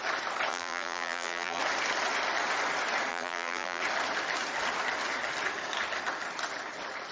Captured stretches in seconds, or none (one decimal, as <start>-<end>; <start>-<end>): 0.0-0.5; 1.6-3.1; 3.8-7.1